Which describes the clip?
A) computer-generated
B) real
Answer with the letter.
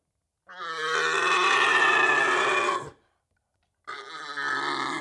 B